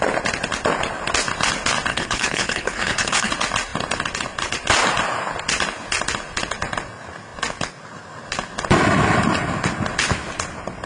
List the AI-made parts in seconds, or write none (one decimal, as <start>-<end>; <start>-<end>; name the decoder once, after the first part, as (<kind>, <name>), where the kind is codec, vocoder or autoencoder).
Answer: 1.9-3.3 (codec, HILCodec)